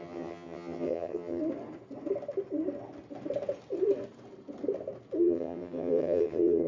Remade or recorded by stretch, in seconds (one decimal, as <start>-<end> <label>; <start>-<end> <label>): 0.0-1.4 remade; 1.4-5.2 recorded; 5.2-6.7 remade